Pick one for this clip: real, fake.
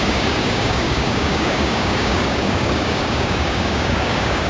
fake